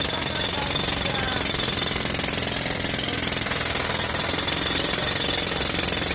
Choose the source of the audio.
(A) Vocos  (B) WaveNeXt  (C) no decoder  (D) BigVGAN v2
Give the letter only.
C